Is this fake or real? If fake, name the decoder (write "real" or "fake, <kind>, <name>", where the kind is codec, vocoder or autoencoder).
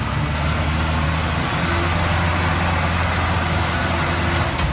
real